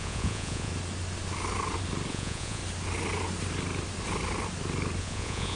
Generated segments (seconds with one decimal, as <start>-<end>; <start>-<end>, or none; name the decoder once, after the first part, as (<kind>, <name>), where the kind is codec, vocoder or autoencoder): 0.0-0.7 (vocoder, Vocos); 2.1-2.6; 5.0-5.6